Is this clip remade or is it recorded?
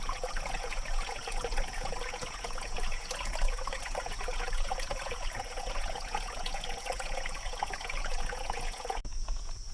remade